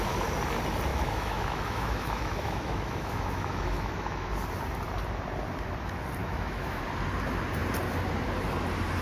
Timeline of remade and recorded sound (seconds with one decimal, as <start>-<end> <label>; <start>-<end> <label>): 0.0-0.9 recorded; 0.9-4.3 remade; 4.3-6.2 recorded; 6.2-6.8 remade; 6.8-9.0 recorded